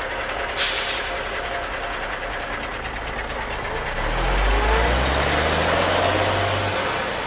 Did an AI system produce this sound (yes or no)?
no